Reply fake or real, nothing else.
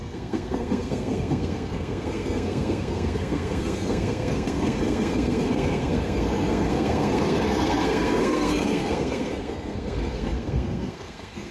fake